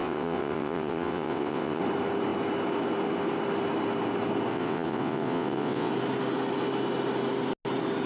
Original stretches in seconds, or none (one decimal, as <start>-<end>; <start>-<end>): 1.8-4.5; 5.9-8.1